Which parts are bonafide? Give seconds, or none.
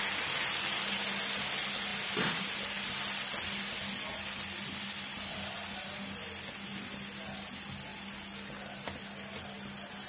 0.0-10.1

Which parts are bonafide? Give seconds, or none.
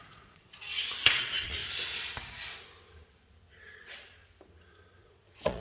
0.7-1.2; 1.6-5.0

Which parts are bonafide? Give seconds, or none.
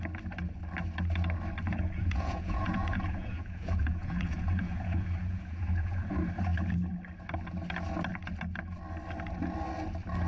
0.0-1.7; 6.1-10.3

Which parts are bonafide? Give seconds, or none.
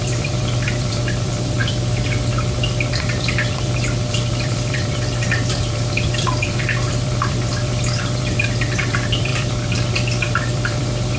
none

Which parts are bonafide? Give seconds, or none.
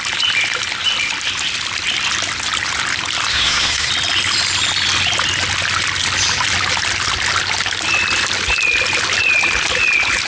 0.0-3.3; 3.9-10.3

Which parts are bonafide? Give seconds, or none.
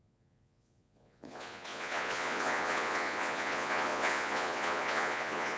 none